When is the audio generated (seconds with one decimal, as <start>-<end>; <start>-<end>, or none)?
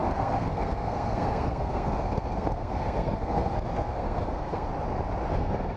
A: 0.0-4.7; 5.3-5.8